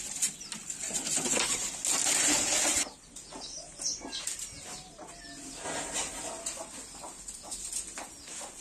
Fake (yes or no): no